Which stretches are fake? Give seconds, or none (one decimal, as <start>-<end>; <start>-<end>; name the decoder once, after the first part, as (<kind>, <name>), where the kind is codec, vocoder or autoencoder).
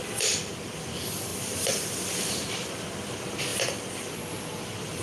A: 1.3-2.7 (vocoder, BigVGAN v2)